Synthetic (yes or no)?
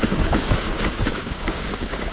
yes